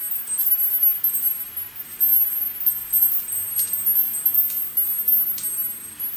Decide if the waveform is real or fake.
real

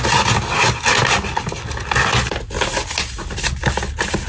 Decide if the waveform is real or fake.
real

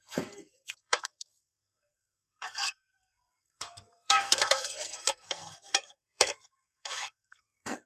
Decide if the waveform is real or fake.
fake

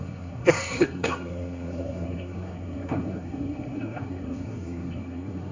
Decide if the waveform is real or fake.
fake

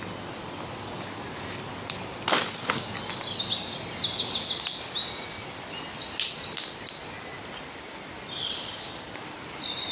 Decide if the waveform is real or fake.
real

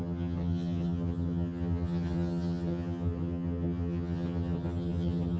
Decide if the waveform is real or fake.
fake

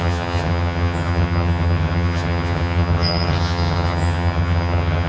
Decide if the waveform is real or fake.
fake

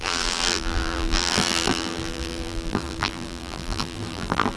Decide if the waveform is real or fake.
fake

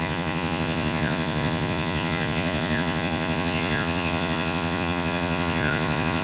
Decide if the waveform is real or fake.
fake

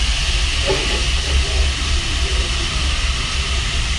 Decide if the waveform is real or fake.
real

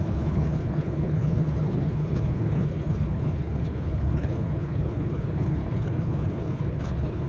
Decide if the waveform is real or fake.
fake